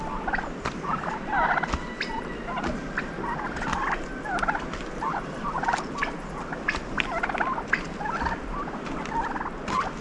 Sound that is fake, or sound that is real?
real